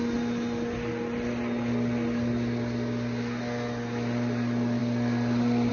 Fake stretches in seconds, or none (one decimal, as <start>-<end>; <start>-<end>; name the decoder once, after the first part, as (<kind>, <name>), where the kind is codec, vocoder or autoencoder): none